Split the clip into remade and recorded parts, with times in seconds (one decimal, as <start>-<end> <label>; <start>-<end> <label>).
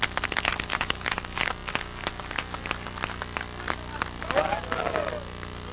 0.0-0.7 recorded; 0.7-1.2 remade; 1.2-5.7 recorded